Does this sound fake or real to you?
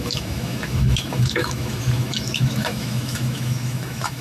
fake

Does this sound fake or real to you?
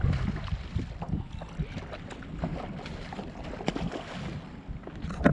real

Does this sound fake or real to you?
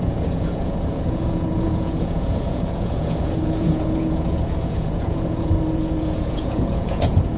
fake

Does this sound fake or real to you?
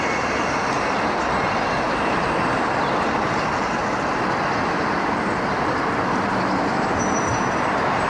real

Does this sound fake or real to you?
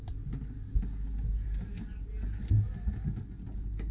real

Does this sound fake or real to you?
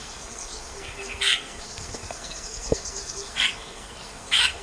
fake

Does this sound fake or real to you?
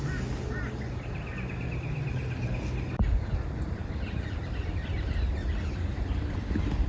real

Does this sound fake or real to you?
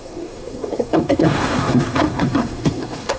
fake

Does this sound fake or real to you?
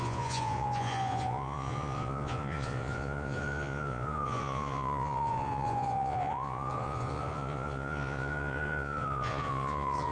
fake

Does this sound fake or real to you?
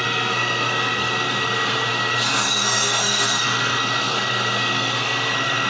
fake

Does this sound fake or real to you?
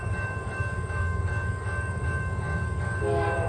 fake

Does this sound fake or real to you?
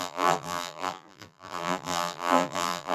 fake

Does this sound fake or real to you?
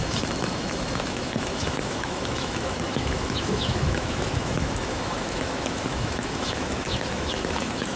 fake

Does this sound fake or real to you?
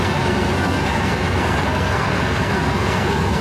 fake